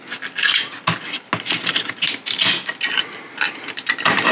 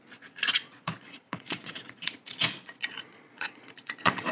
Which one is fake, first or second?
second